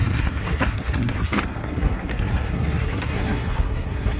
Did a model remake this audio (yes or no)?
yes